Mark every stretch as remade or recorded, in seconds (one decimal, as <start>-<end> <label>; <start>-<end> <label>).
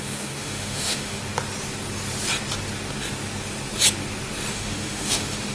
0.0-1.2 remade; 1.2-4.5 recorded; 4.5-5.5 remade